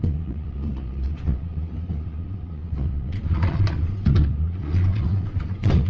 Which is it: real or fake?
fake